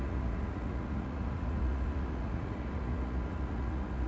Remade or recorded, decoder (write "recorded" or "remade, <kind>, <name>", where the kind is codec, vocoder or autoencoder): remade, vocoder, Vocos